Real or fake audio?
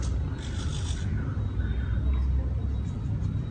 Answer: real